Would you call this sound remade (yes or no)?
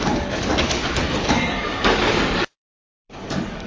yes